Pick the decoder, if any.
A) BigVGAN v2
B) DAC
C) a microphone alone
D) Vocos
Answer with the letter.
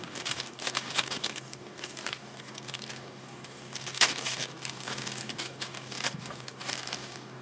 B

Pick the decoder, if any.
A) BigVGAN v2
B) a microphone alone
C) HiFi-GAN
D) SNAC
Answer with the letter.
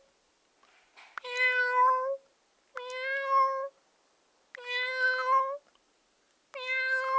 B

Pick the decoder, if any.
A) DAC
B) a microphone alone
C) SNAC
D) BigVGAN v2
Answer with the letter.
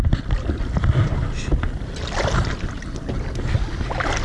B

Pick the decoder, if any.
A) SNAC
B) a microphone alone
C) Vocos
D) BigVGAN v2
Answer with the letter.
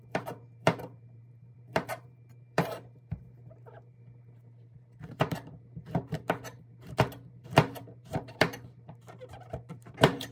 D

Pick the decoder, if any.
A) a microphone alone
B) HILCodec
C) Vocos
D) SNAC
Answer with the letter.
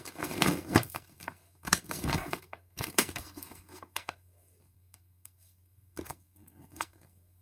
D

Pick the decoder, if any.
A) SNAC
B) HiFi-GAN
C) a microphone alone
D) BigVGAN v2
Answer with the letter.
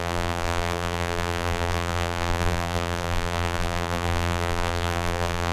D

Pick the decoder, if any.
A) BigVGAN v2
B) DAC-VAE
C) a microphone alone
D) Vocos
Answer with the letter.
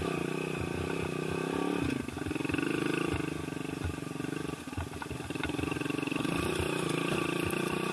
C